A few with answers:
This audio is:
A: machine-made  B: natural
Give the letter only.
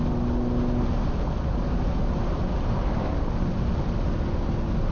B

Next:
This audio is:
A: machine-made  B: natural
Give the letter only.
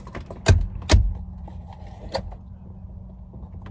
B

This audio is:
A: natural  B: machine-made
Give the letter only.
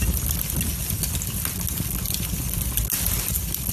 A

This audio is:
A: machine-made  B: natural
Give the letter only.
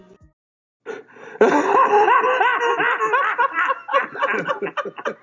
B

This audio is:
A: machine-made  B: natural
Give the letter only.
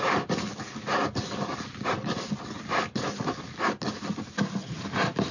B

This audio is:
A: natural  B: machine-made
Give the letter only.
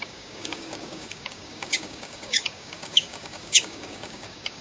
B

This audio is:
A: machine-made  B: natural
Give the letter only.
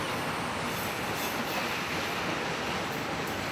B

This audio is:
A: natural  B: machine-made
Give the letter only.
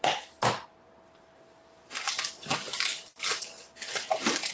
A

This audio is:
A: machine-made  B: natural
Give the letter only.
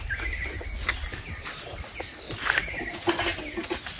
B